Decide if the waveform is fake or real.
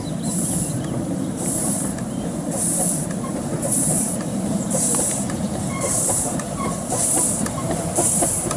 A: fake